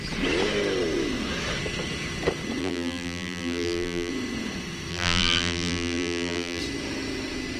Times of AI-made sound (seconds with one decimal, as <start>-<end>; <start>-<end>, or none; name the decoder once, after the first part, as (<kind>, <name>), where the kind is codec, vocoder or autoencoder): 2.6-4.1 (vocoder, BigVGAN v2); 4.9-6.6